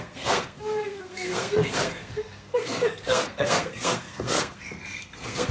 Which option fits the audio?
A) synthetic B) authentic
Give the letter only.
A